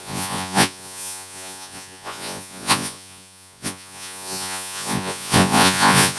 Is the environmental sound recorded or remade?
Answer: remade